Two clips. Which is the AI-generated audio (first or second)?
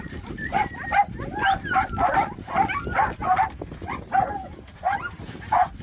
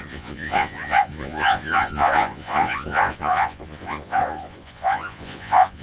second